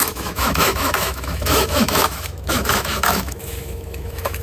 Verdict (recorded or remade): remade